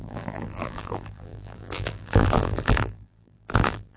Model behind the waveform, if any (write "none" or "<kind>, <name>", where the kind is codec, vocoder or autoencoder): vocoder, BigVGAN v2